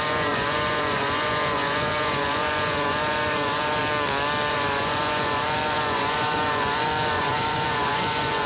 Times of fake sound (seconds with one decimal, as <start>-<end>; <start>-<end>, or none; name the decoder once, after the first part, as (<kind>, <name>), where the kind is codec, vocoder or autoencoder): 0.0-3.8 (vocoder, Vocos); 4.5-8.5